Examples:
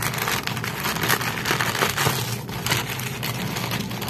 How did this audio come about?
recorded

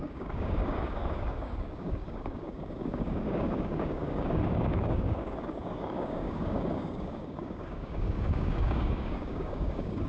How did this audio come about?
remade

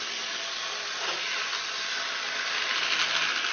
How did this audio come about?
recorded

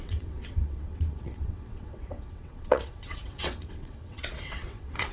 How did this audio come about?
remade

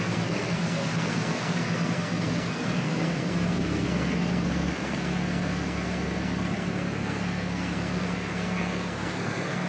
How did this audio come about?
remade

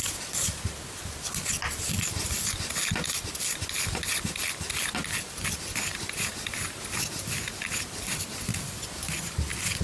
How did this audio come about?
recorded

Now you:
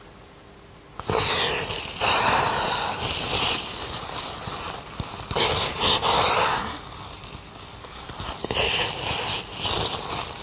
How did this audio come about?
recorded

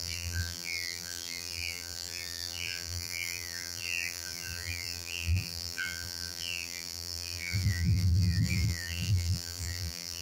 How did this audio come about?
remade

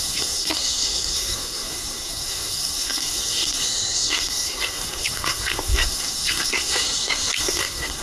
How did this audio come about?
remade